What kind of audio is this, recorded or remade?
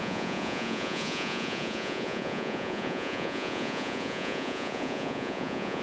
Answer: remade